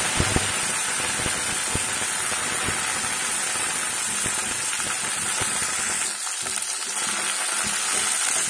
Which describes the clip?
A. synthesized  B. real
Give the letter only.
B